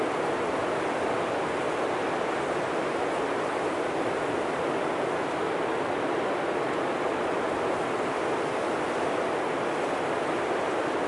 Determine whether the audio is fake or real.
real